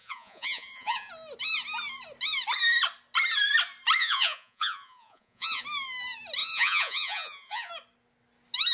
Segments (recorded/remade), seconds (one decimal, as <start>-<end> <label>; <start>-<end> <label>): 0.0-1.1 remade; 1.1-4.0 recorded; 4.0-5.6 remade; 5.6-6.4 recorded; 6.4-7.7 remade; 7.7-8.7 recorded